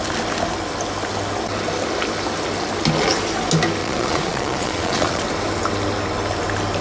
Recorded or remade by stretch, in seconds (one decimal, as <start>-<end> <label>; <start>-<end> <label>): 0.0-3.8 recorded; 3.8-5.2 remade; 5.2-6.8 recorded